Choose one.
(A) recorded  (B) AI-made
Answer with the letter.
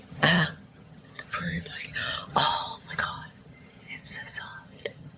B